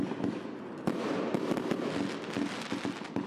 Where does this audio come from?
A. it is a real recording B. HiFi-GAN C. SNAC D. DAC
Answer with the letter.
A